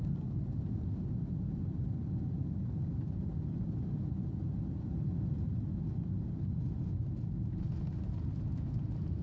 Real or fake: real